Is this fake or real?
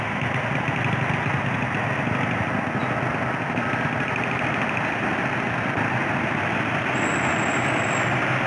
real